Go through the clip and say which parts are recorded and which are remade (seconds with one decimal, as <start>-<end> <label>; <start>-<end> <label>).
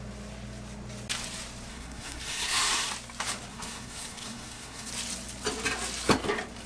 0.0-1.7 recorded; 1.7-2.9 remade; 2.9-3.5 recorded; 3.5-4.9 remade; 4.9-6.7 recorded